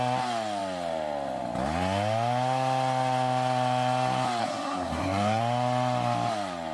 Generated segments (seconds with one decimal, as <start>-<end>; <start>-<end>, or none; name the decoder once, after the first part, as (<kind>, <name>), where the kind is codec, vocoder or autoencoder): 4.4-5.4 (codec, SNAC)